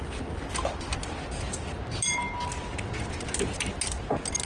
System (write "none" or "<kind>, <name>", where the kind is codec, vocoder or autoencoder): none